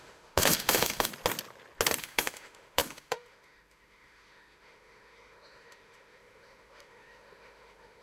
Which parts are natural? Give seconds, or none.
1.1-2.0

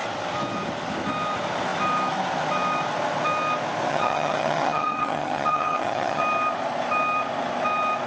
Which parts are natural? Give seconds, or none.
0.0-3.9; 6.2-8.1

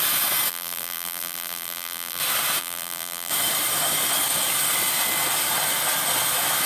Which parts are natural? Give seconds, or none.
0.0-0.5; 2.2-2.6; 3.3-6.7

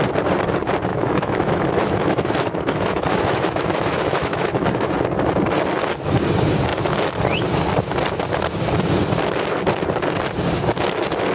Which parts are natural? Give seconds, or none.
0.0-0.9; 4.9-11.3

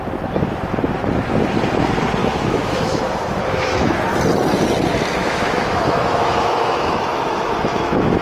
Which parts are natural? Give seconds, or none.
0.0-2.2; 4.0-5.2